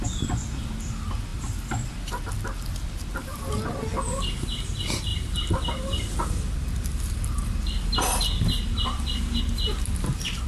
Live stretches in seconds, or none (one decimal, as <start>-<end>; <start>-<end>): 0.0-1.3; 2.1-5.1; 9.4-10.5